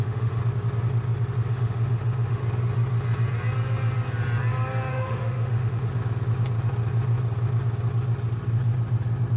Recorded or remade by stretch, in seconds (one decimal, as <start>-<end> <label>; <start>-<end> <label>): 0.0-0.4 remade; 0.4-1.5 recorded; 1.5-2.4 remade; 2.4-4.9 recorded; 4.9-5.9 remade; 5.9-9.4 recorded